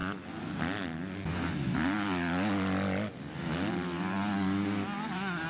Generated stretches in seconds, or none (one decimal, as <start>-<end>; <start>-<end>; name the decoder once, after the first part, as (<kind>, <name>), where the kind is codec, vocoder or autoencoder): none